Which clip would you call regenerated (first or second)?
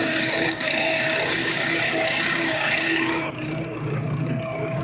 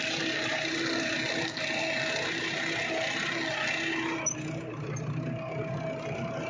first